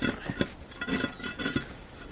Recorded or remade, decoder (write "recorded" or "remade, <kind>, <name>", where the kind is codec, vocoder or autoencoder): recorded